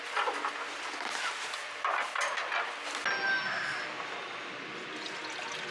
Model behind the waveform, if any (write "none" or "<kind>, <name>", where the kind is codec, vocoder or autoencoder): none